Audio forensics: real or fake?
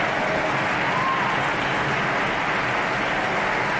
real